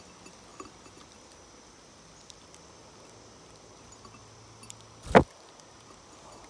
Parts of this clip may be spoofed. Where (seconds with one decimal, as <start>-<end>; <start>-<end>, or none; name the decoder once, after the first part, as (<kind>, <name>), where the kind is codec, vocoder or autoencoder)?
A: 0.5-1.1 (vocoder, BigVGAN v2)